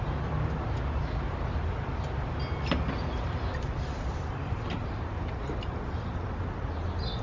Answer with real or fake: real